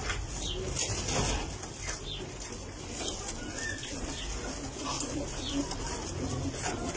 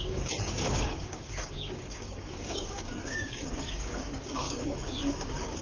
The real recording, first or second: first